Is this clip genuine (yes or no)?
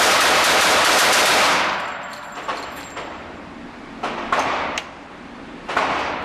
no